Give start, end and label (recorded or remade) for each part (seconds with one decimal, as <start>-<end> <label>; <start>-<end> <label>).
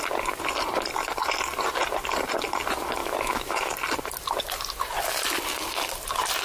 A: 0.0-3.0 recorded; 3.0-3.7 remade; 3.7-6.4 recorded